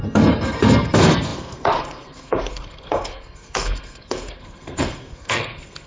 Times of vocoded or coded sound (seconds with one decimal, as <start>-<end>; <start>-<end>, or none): 0.0-5.9

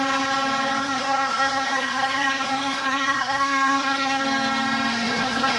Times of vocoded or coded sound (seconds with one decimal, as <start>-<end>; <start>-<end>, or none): 0.8-4.2; 4.9-5.6

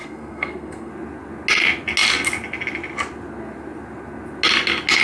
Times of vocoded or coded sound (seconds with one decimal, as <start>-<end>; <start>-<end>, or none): 0.0-0.9

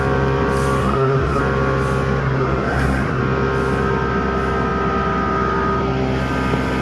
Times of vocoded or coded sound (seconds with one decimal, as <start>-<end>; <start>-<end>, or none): 0.8-1.4; 2.2-3.2